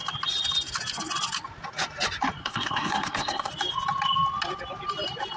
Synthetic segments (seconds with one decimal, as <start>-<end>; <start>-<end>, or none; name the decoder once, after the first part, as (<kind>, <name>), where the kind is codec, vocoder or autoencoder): 2.4-3.5 (codec, SNAC)